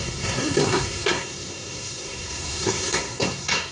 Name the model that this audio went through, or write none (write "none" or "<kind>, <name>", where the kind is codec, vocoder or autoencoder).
codec, SNAC